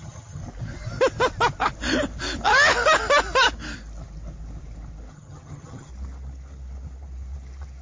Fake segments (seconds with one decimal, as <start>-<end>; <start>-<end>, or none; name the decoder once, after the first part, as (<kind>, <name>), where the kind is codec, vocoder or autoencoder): 0.0-0.4 (vocoder, HiFi-GAN); 5.1-5.9